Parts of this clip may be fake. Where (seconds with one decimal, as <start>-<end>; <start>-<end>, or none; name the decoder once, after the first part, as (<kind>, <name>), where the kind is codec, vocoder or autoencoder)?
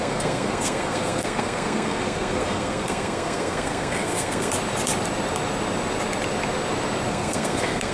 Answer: 0.0-4.5 (codec, SNAC); 7.1-7.9